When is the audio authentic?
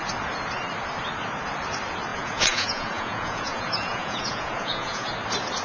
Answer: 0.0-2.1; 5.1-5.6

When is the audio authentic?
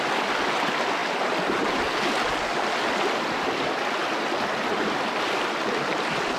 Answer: 0.0-6.4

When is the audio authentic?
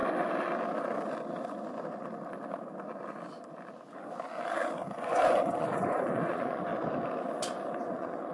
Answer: 0.0-5.0; 6.7-7.8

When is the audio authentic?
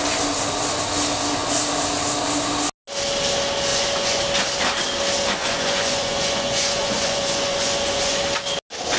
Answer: 0.0-3.7; 4.2-5.4; 8.2-9.0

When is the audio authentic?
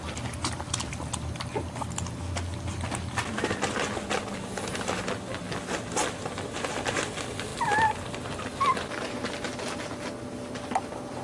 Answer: 0.0-11.2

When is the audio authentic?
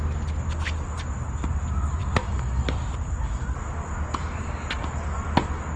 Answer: 0.0-5.8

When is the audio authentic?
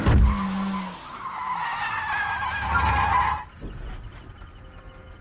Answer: 0.0-5.2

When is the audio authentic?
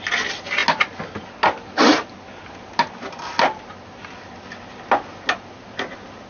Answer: 0.0-6.3